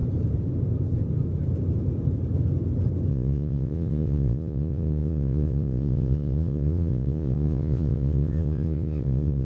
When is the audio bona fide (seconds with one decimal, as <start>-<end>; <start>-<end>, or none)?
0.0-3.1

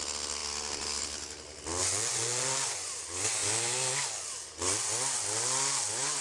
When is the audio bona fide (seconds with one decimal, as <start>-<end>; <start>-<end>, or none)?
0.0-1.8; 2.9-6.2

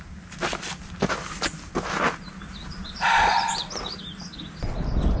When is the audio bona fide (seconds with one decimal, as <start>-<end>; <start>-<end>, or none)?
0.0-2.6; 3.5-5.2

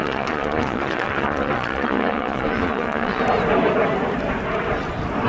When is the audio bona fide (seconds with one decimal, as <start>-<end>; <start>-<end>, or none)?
3.2-5.3